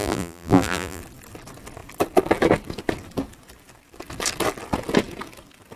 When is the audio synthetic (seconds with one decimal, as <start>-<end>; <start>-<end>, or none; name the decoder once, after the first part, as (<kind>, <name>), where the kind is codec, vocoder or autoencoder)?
0.0-1.0 (vocoder, BigVGAN v2)